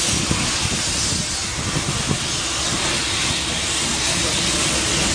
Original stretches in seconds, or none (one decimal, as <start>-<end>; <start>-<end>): 0.0-5.1